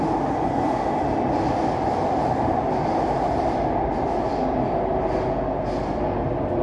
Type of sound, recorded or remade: recorded